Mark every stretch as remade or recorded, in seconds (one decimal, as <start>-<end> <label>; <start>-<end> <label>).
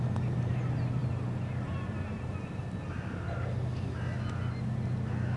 0.0-5.4 recorded